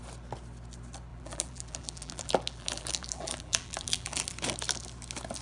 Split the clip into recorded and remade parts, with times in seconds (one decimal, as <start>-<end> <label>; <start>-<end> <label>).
0.0-1.1 recorded; 1.1-4.3 remade; 4.3-5.4 recorded